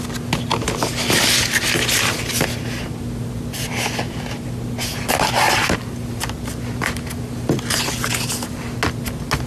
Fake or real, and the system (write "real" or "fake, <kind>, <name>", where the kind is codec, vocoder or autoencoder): real